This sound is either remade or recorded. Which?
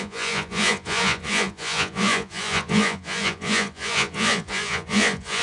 remade